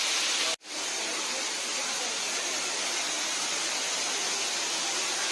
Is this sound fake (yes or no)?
no